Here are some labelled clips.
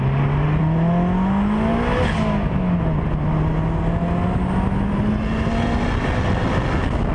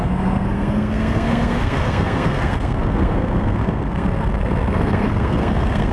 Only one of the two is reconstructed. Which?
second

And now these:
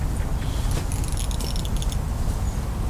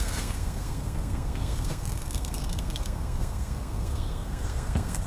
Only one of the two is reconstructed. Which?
second